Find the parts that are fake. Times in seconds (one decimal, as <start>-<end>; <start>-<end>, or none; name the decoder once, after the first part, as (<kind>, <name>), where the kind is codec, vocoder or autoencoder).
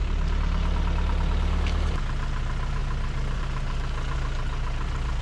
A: 0.0-2.0 (vocoder, BigVGAN v2); 2.8-3.4